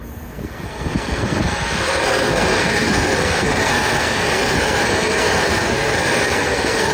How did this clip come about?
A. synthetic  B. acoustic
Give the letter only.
A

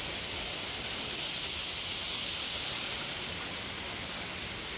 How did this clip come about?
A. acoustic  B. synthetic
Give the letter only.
A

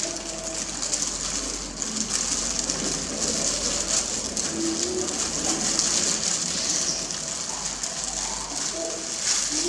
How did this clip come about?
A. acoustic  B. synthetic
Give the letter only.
A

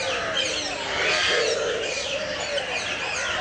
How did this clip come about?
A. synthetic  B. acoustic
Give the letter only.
B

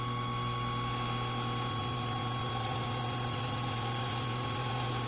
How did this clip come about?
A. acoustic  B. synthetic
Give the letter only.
A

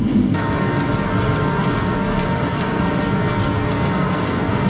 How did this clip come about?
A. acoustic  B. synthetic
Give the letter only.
B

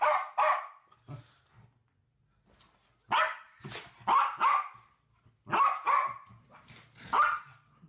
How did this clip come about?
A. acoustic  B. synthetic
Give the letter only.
A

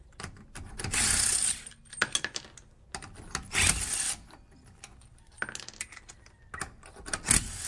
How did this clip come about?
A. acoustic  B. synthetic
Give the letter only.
A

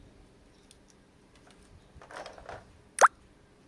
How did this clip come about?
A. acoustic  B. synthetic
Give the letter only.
A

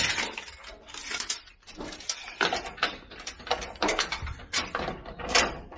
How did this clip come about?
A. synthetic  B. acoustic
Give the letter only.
B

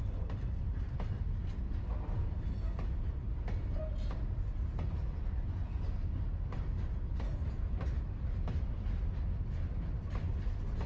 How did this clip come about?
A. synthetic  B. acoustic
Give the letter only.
B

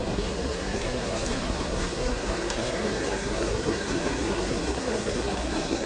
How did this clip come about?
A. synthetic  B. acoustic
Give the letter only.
A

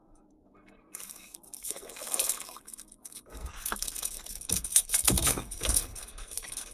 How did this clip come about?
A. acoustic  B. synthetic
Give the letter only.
B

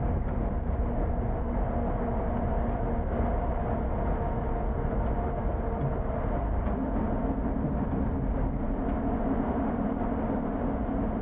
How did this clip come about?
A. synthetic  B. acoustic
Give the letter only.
B